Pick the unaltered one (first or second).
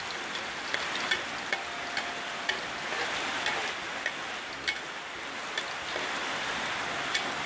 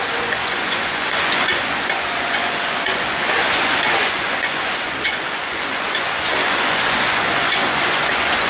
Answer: first